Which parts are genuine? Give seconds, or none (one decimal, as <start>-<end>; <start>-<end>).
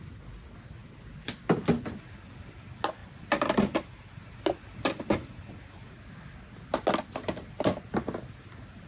0.0-0.8; 2.5-3.0; 4.2-8.9